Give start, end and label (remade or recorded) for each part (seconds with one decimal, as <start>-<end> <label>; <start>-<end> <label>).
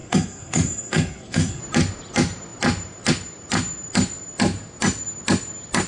0.0-1.6 remade; 1.6-5.9 recorded